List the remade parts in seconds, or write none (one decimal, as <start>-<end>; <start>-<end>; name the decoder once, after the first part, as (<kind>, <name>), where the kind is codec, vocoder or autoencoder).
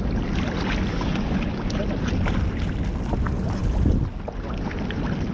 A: 0.9-1.8 (codec, DAC)